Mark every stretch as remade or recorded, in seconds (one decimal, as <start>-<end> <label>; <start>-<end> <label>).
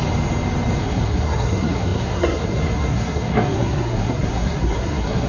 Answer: 0.0-0.8 recorded; 0.8-5.3 remade